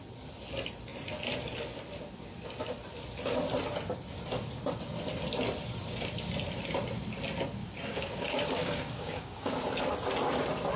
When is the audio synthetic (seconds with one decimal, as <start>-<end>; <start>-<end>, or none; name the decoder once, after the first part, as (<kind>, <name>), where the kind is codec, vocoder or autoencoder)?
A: 7.6-9.5 (codec, DAC)

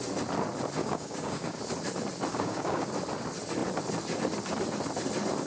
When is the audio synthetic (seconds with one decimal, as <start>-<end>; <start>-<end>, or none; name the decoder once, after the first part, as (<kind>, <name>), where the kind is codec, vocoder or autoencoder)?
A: 0.8-1.6 (codec, DAC); 2.3-2.9

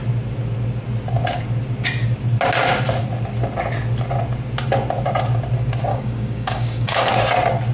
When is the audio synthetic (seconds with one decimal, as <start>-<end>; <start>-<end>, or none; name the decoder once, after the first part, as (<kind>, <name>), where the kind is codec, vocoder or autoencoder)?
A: 5.9-7.1 (codec, DAC)

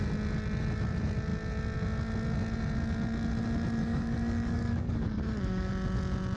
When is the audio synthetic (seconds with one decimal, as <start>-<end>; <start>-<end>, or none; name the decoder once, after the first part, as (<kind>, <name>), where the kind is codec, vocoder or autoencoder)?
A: 3.8-5.7 (codec, DAC)

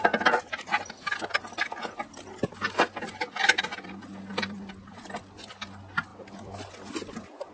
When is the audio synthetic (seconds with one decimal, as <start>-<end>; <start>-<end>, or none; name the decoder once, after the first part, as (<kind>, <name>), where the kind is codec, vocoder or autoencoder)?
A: none

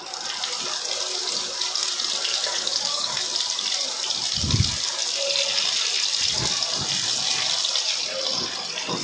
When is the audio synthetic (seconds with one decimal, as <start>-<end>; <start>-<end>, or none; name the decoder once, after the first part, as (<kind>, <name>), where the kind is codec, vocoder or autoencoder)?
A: 2.3-3.1 (codec, DAC)